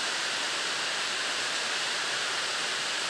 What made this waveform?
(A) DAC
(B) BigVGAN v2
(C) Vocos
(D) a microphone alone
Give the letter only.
B